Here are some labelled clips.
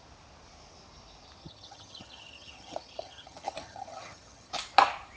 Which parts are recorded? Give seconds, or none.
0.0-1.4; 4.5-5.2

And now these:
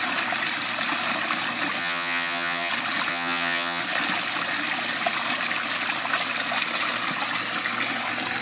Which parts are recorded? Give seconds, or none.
0.0-1.8; 2.7-3.1; 3.8-8.4

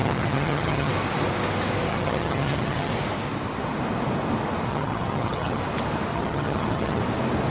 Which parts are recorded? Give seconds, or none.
0.9-1.9; 2.9-4.7; 5.6-6.1; 7.0-7.5

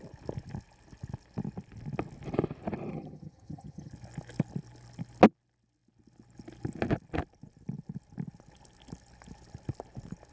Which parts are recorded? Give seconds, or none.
0.0-2.9; 3.9-10.3

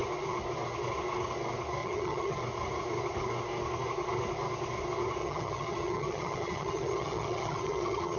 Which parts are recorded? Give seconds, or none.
0.0-1.8; 2.4-5.2

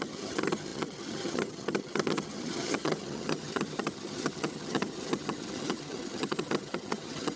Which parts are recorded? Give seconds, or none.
none

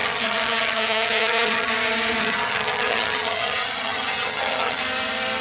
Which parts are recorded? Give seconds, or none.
1.7-2.2; 4.8-5.4

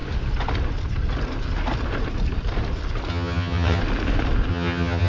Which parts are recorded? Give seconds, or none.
0.0-3.1; 3.8-4.5